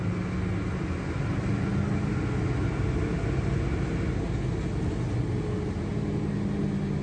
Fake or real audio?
real